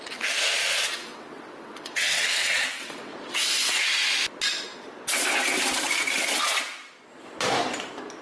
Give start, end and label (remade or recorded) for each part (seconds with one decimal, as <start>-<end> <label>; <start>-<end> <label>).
0.0-0.6 recorded; 0.6-3.1 remade; 3.1-8.2 recorded

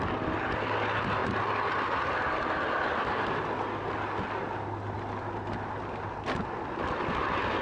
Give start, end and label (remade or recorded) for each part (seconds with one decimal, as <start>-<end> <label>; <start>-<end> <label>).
0.0-7.6 recorded